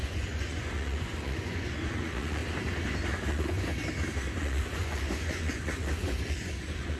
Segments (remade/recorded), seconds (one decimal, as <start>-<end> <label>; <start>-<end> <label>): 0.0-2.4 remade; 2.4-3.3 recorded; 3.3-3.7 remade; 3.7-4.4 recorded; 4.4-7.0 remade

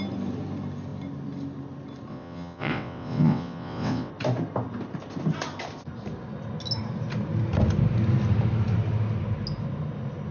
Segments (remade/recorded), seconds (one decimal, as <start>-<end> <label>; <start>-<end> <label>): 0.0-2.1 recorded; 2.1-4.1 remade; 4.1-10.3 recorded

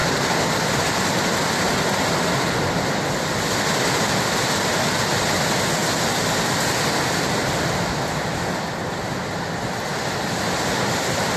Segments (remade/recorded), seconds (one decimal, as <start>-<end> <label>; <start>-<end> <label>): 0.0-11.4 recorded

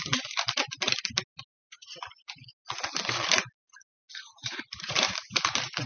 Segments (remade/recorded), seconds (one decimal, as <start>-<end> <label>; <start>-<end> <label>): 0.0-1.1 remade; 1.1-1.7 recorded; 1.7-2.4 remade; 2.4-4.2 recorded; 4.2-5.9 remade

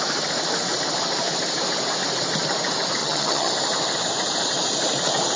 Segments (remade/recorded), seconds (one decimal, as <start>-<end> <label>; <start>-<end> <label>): 0.0-3.0 recorded; 3.0-3.5 remade; 3.5-5.4 recorded

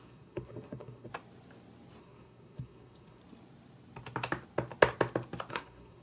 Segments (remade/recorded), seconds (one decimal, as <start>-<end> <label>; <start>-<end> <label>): 0.0-1.1 remade; 1.1-2.0 recorded; 2.0-3.2 remade; 3.2-5.5 recorded; 5.5-6.0 remade